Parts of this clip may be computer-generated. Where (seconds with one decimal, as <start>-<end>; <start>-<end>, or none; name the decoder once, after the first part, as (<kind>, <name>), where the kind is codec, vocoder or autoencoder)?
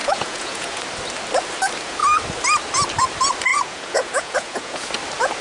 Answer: 0.0-0.8 (vocoder, Vocos); 3.5-4.9